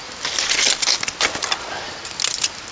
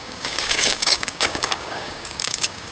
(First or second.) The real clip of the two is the first